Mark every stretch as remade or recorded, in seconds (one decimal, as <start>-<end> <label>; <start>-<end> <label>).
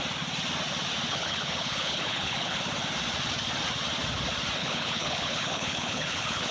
0.0-1.1 recorded; 1.1-2.6 remade; 2.6-4.6 recorded; 4.6-6.5 remade